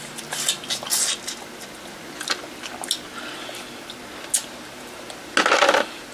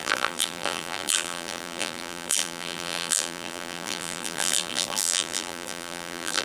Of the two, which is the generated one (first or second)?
second